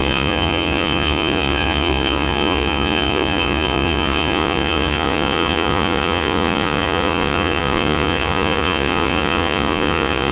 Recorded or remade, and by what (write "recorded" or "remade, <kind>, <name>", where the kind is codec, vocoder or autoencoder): remade, vocoder, Vocos